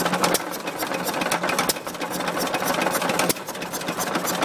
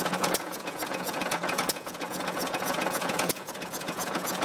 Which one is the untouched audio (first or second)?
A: first